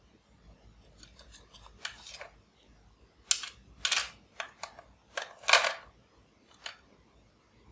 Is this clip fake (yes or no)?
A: no